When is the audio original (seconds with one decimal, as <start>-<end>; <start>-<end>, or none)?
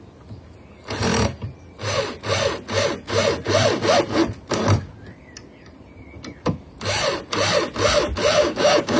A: 0.0-8.4